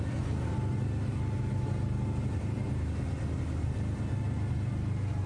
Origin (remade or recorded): recorded